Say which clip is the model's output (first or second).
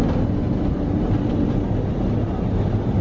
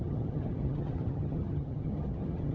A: second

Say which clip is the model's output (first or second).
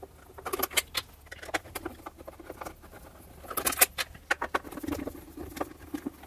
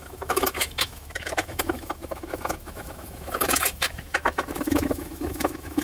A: second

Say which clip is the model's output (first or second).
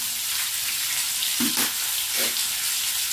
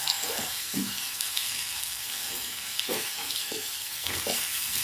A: second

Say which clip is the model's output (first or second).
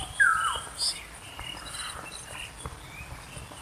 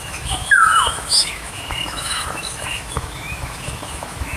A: second